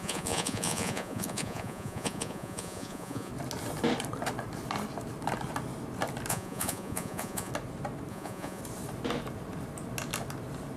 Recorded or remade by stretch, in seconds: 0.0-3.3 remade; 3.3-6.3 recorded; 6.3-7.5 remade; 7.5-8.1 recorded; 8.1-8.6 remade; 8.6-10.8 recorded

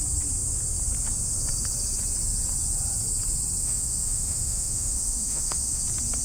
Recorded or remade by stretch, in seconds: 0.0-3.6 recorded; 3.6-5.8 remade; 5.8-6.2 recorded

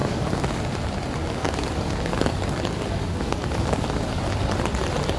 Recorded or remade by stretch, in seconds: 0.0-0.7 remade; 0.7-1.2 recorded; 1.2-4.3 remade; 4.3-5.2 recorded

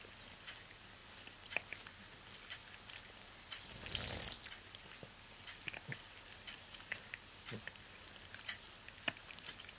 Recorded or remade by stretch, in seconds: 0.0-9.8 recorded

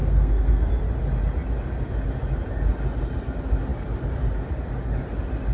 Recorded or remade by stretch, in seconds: 0.0-0.7 remade; 0.7-5.5 recorded